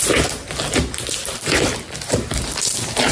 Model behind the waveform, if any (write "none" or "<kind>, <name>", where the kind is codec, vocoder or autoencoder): none